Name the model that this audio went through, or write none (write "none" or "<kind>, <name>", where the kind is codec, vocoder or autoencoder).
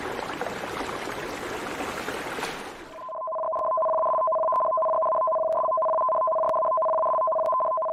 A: none